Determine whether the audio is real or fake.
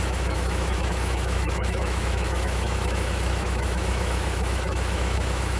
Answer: fake